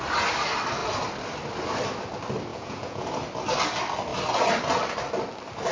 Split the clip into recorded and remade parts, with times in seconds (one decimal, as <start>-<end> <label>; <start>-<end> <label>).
0.0-2.5 recorded; 2.5-3.2 remade; 3.2-5.7 recorded